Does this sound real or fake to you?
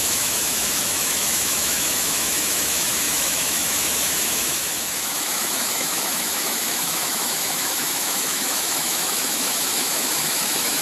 fake